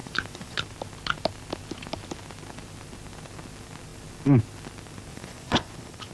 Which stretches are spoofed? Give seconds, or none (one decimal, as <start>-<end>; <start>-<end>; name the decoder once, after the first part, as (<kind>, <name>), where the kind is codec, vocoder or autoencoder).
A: 0.0-0.6 (vocoder, Vocos); 5.1-6.1